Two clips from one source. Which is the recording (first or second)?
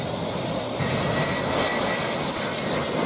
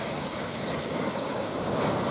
first